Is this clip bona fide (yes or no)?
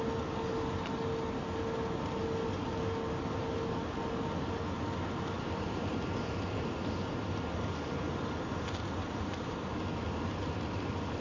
yes